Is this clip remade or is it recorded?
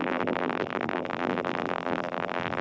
remade